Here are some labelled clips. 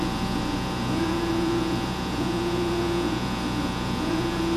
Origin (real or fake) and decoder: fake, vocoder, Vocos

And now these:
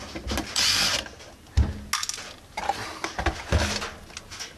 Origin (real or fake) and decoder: real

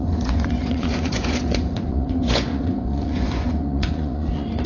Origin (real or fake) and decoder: fake, vocoder, Vocos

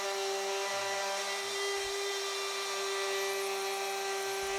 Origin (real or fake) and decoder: real